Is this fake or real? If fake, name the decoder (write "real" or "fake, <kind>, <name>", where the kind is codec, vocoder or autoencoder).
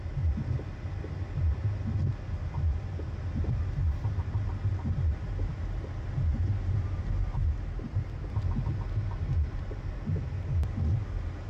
real